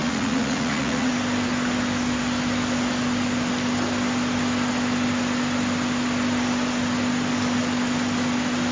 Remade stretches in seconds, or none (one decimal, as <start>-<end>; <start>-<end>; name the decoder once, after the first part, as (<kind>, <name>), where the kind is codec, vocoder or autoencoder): 0.0-1.1 (vocoder, Vocos)